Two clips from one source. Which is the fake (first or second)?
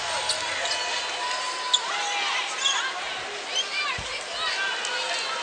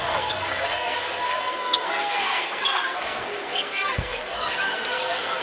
second